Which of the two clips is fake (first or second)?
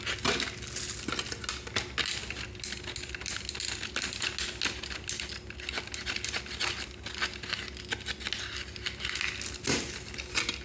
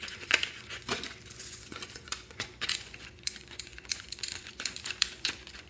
second